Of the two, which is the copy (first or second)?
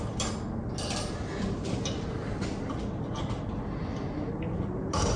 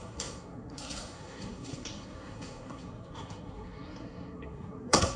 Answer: second